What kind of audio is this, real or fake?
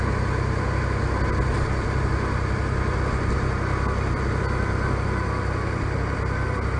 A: real